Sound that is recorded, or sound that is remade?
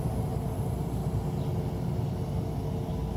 recorded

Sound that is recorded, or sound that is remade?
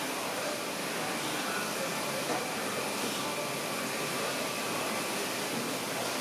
recorded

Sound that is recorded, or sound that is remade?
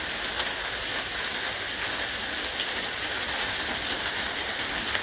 recorded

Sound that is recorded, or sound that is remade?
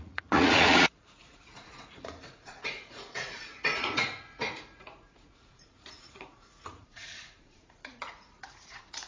remade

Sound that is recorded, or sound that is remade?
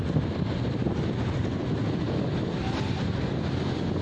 recorded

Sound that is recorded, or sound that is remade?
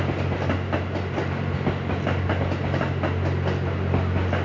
recorded